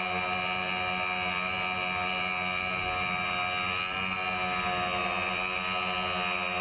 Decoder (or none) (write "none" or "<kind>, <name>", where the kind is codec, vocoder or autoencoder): none